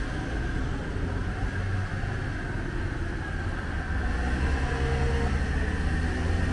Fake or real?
real